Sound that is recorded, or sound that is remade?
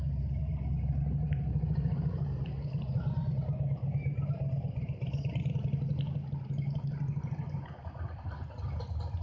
recorded